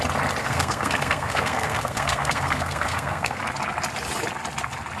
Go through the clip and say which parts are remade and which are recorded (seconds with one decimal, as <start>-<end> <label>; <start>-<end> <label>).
0.0-0.4 recorded; 0.4-3.4 remade; 3.4-5.0 recorded